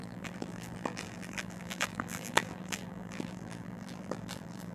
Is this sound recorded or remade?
remade